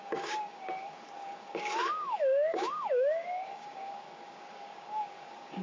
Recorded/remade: remade